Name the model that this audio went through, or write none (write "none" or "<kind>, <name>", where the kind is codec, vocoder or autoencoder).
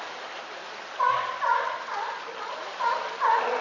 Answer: none